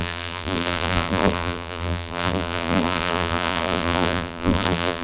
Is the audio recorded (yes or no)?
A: no